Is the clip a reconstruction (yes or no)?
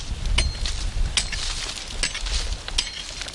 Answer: no